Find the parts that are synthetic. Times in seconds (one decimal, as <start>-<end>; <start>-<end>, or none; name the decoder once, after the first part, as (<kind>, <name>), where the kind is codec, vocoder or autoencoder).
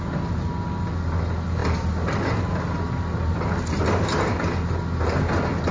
none